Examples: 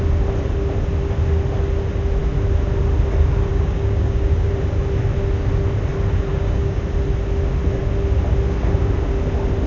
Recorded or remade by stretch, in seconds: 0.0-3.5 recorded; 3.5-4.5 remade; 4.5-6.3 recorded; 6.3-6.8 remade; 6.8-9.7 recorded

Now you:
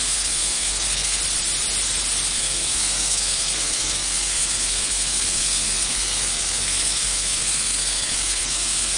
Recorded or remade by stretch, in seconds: 0.0-1.2 remade; 1.2-2.3 recorded; 2.3-9.0 remade

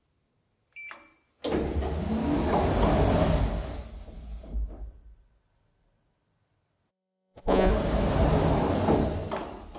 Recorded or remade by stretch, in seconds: 0.0-6.9 recorded; 6.9-7.7 remade; 7.7-9.8 recorded